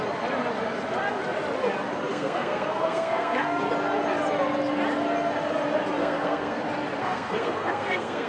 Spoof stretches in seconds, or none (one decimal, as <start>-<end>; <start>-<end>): 2.1-3.7; 6.0-6.6; 7.0-8.3